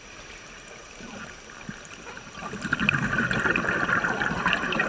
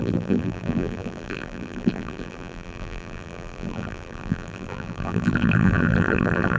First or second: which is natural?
first